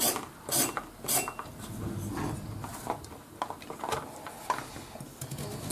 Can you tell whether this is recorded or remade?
recorded